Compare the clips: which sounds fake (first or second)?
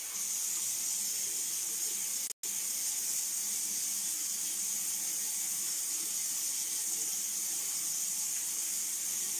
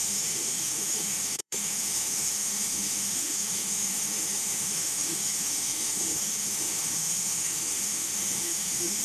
second